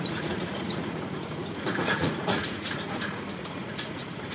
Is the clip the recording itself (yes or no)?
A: no